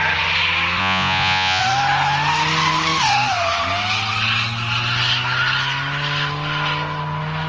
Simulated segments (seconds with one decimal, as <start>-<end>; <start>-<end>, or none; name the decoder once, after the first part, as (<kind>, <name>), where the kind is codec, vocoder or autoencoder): 0.8-1.6 (vocoder, Vocos)